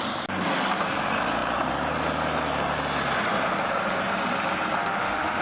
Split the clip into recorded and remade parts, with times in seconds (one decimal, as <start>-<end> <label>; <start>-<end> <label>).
0.0-4.8 recorded; 4.8-5.4 remade